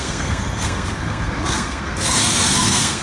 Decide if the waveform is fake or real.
fake